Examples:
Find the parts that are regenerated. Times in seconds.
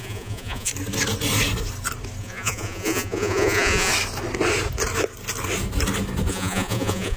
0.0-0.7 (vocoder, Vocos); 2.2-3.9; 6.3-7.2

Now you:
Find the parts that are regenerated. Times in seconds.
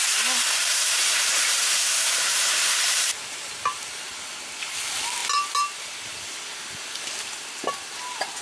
0.6-4.1 (vocoder, BigVGAN v2)